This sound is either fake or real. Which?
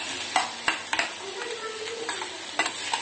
real